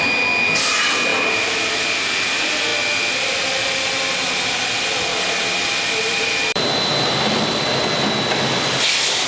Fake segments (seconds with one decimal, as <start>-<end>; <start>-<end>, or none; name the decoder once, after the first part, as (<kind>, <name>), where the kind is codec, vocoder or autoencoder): 1.1-1.7 (vocoder, BigVGAN v2); 5.1-8.1